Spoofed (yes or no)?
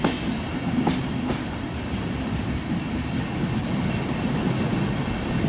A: no